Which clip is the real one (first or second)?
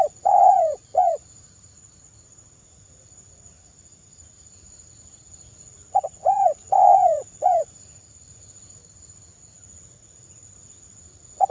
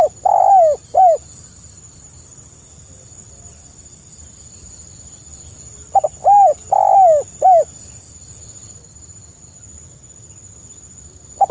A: second